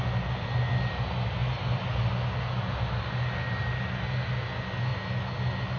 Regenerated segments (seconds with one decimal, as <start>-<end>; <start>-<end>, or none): none